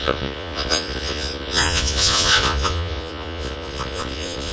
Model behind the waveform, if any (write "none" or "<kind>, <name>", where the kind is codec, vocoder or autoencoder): vocoder, Vocos